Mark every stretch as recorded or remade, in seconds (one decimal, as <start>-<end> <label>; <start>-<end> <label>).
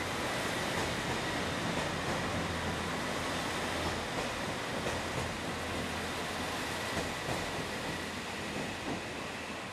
0.0-9.7 recorded